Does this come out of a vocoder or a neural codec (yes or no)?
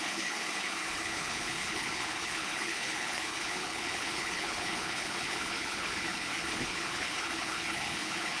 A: yes